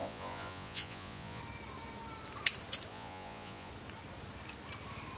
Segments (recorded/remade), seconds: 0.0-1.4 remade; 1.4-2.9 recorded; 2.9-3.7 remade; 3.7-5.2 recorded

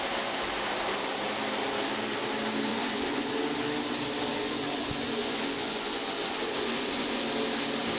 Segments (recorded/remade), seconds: 0.0-2.7 recorded; 2.7-3.3 remade; 3.3-4.3 recorded; 4.3-7.2 remade; 7.2-8.0 recorded

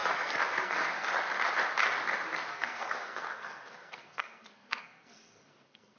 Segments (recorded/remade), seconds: 0.0-1.1 remade; 1.1-2.5 recorded; 2.5-6.0 remade

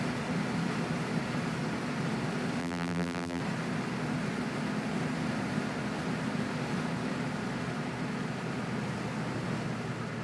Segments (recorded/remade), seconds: 0.0-2.6 recorded; 2.6-3.4 remade; 3.4-10.2 recorded

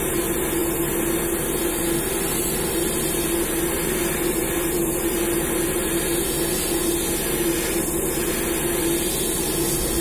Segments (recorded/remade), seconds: 0.0-10.0 recorded

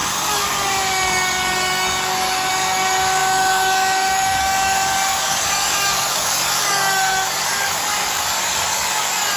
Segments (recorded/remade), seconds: 0.0-9.4 remade

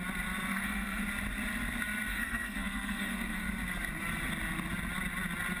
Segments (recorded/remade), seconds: 0.0-0.5 recorded; 0.5-1.0 remade; 1.0-2.1 recorded; 2.1-3.5 remade; 3.5-5.6 recorded